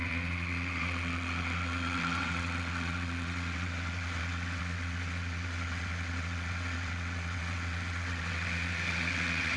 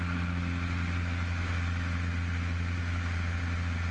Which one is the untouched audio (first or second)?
second